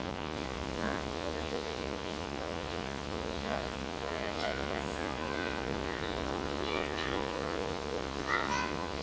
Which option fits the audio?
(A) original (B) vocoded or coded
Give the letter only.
B